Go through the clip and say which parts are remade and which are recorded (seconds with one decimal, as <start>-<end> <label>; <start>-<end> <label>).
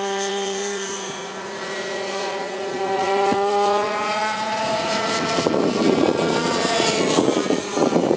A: 0.0-8.2 remade